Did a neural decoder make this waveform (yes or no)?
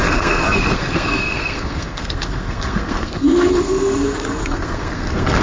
yes